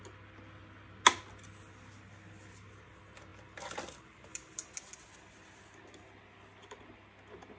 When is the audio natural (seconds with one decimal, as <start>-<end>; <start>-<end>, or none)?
0.0-7.6